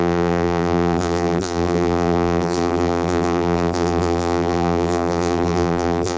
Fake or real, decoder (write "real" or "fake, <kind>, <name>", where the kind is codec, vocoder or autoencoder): fake, vocoder, BigVGAN v2